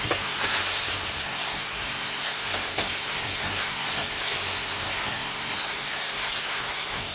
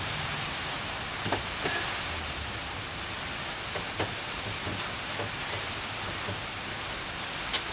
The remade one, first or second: first